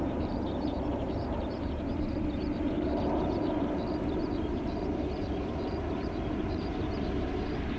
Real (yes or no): no